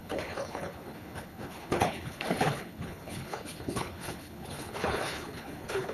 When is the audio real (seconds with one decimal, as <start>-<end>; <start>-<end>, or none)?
none